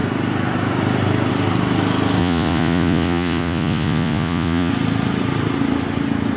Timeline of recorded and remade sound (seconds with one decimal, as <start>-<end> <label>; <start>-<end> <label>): 0.0-2.2 recorded; 2.2-4.7 remade; 4.7-6.4 recorded